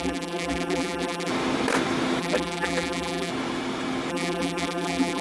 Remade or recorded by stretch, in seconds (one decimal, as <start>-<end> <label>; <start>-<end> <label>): 0.0-1.3 remade; 1.3-2.2 recorded; 2.2-3.3 remade; 3.3-4.1 recorded; 4.1-5.2 remade